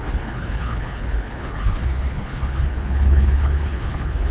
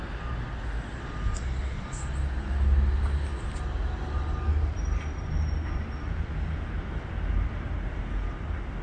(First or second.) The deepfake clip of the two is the first